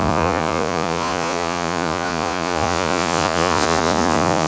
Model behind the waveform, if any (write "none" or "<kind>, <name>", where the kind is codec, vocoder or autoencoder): vocoder, Vocos